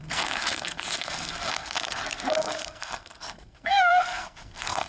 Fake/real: fake